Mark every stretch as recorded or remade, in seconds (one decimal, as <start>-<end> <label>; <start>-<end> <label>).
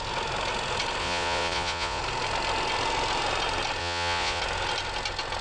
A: 0.0-1.0 recorded; 1.0-2.0 remade; 2.0-3.8 recorded; 3.8-4.4 remade; 4.4-5.4 recorded